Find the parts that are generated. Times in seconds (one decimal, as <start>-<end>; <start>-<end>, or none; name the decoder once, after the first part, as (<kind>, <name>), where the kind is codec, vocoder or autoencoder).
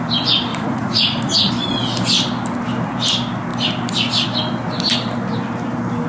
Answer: 0.5-1.5 (vocoder, Vocos)